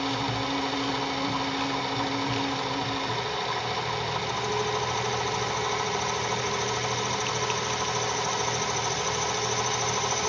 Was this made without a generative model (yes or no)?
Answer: yes